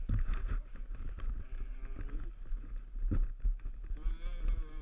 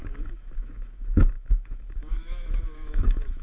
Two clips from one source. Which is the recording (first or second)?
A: first